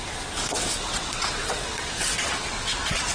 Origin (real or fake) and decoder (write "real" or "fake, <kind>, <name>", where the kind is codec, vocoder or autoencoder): fake, vocoder, WaveNeXt